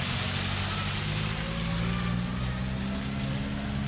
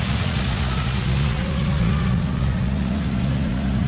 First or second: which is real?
first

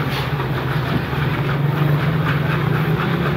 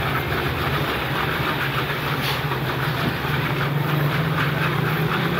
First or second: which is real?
first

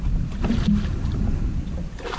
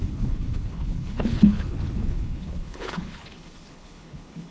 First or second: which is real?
first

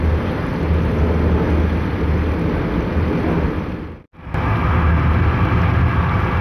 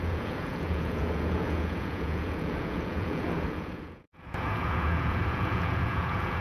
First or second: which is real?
first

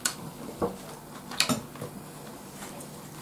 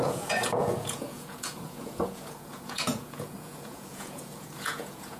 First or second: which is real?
first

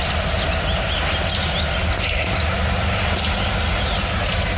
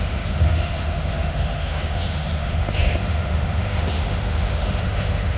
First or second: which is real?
first